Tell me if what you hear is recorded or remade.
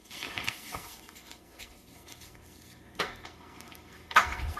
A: remade